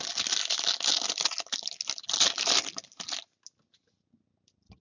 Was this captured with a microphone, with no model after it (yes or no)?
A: yes